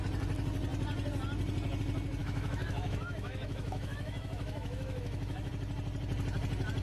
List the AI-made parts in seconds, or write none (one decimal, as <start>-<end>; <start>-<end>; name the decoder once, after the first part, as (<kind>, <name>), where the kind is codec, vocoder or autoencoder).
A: 2.2-5.5 (autoencoder, DAC-VAE)